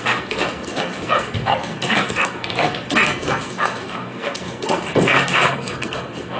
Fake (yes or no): yes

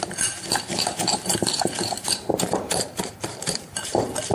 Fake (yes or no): yes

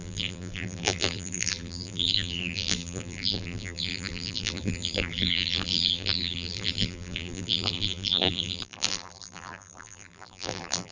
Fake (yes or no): yes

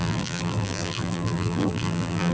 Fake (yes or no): yes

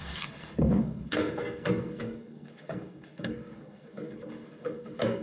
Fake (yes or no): yes